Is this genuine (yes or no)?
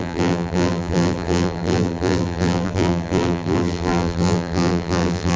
no